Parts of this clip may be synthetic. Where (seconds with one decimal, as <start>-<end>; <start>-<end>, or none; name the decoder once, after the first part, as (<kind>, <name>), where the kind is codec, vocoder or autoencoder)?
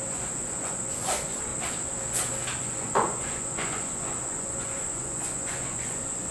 0.0-1.5 (vocoder, Vocos); 2.6-6.3